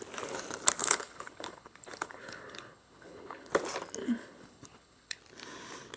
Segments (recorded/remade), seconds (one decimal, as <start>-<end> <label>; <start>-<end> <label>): 0.0-0.8 recorded; 0.8-3.5 remade; 3.5-4.0 recorded; 4.0-5.2 remade; 5.2-6.0 recorded